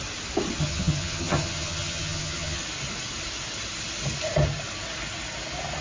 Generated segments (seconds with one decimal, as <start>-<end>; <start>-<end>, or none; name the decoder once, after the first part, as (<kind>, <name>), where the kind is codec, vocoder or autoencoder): 0.6-2.6 (vocoder, HiFi-GAN)